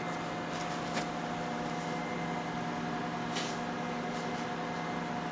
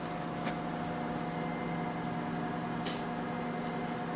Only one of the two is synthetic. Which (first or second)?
first